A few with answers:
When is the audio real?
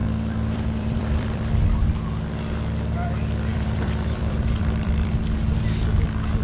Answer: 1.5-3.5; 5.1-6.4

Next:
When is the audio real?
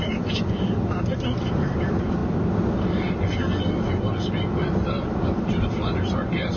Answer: 0.0-6.6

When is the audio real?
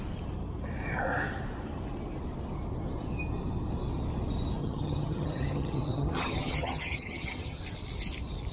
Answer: 0.0-4.6; 7.6-8.5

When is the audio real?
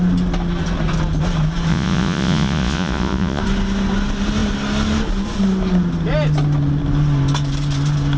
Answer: 0.0-1.7; 3.4-8.2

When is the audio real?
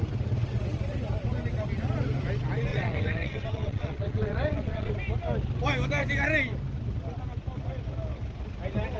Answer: 0.0-2.7; 4.9-9.0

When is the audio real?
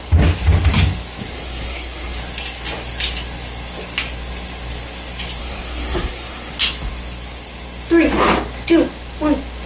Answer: 0.0-1.3; 2.2-5.4; 6.5-9.7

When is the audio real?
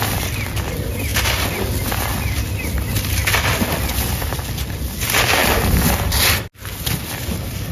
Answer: 0.0-7.7